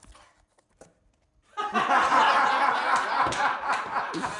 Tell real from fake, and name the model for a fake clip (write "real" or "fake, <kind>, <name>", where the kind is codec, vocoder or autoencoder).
real